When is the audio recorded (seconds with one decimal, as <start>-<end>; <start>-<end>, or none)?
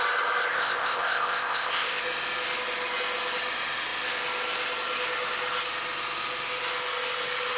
0.0-0.5; 2.0-7.6